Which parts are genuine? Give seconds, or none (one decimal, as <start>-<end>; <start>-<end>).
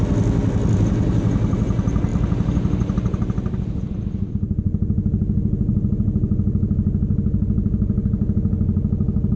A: 0.0-9.4